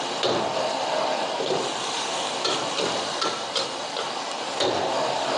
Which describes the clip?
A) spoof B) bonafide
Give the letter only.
B